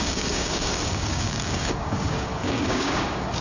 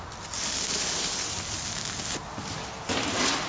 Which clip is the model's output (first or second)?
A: first